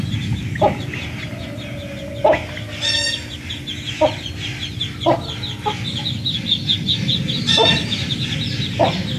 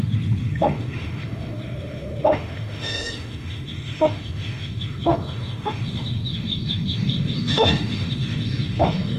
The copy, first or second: second